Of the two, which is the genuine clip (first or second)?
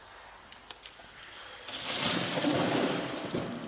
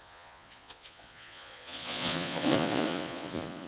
first